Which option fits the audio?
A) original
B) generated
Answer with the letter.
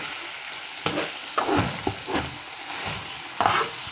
A